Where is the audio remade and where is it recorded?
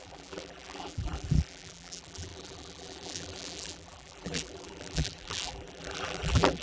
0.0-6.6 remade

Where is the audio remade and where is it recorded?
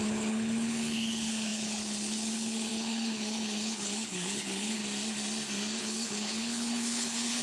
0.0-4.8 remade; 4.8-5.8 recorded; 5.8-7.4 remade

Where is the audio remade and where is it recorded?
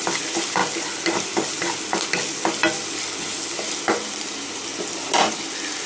0.0-0.6 remade; 0.6-4.1 recorded; 4.1-5.9 remade